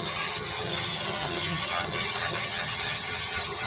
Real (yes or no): no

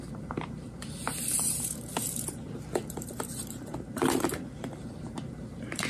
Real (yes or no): no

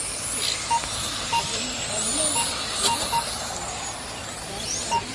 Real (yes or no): yes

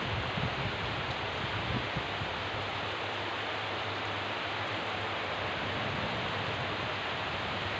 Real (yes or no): yes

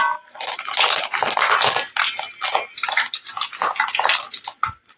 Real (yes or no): yes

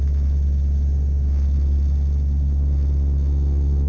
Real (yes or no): yes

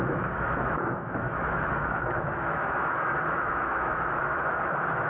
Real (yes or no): no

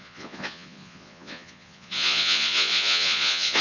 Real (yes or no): no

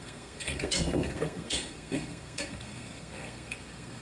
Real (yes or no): no